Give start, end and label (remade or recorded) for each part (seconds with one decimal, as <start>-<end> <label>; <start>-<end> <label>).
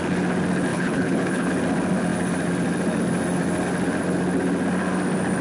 0.0-0.7 recorded; 0.7-1.5 remade; 1.5-5.4 recorded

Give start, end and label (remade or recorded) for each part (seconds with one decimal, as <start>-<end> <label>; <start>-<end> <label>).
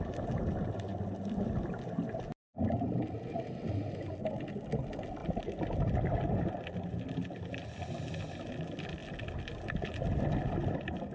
0.0-11.1 recorded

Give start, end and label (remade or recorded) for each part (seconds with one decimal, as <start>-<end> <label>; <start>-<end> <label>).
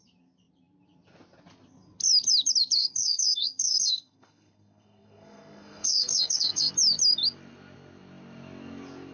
0.0-2.8 recorded; 2.8-6.7 remade; 6.7-9.1 recorded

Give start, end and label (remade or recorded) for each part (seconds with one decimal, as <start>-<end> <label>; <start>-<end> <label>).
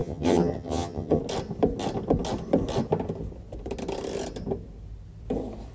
0.0-1.2 remade; 1.2-5.7 recorded